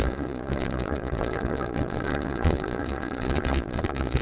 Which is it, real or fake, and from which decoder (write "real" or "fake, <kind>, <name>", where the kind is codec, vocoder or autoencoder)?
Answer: fake, vocoder, Vocos